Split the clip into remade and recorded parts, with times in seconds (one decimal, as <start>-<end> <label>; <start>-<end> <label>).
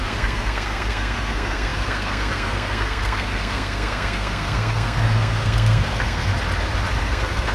0.0-6.3 remade; 6.3-7.0 recorded; 7.0-7.5 remade